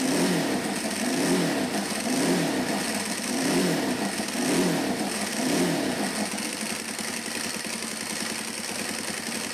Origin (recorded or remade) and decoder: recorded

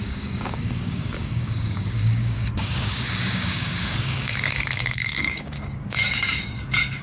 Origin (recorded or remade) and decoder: remade, codec, DAC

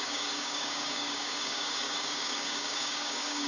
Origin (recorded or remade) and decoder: remade, codec, DAC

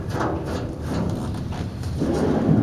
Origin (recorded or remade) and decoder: recorded